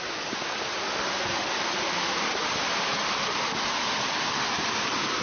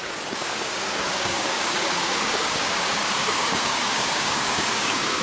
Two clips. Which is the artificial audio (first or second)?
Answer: second